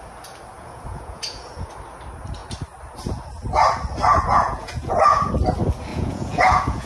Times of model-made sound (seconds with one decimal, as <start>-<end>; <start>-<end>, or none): 0.5-1.7; 4.1-5.3; 5.9-6.9